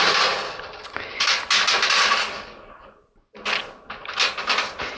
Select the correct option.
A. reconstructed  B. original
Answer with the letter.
B